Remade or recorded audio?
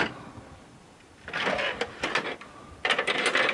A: recorded